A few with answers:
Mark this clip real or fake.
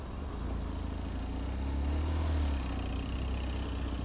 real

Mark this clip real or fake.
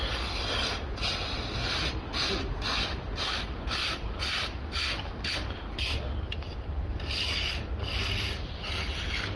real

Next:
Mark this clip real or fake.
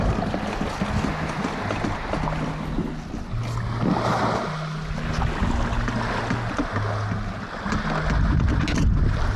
real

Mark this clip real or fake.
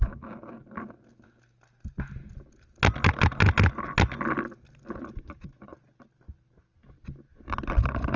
real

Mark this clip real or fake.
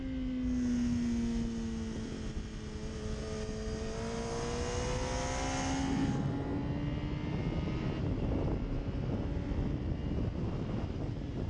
real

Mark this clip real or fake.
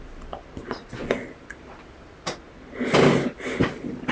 real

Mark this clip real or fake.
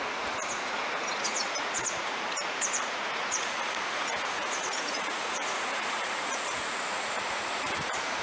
fake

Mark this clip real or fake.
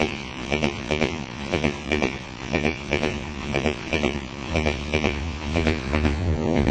fake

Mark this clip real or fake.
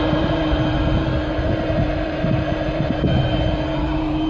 fake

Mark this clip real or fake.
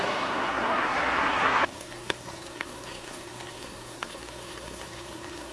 fake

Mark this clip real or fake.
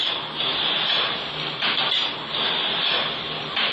real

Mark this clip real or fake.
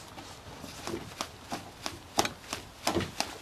real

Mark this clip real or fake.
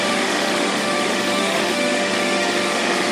fake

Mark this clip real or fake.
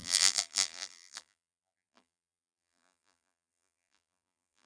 fake